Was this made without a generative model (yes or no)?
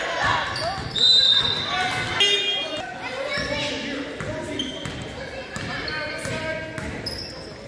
yes